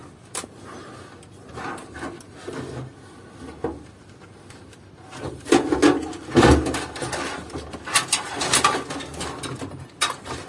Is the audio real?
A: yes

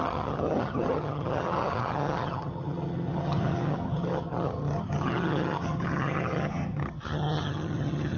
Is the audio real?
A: no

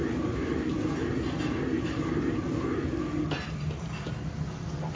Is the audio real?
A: yes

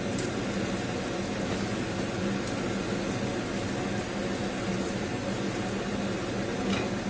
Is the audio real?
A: yes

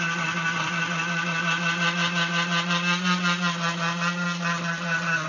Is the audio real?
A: yes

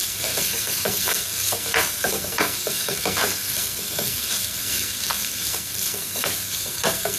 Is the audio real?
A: no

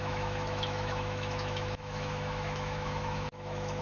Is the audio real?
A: no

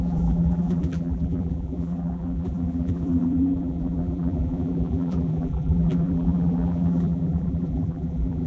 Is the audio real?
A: no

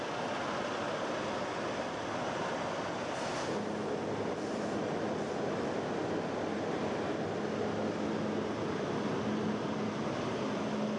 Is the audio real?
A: yes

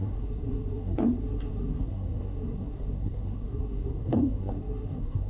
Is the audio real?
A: no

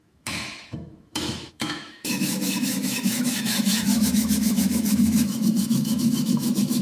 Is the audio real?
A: no